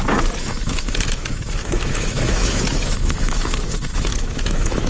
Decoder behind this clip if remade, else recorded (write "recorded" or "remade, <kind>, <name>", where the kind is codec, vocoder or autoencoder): remade, autoencoder, DAC-VAE